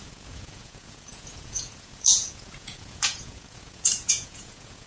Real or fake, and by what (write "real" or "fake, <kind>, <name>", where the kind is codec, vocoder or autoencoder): fake, vocoder, Vocos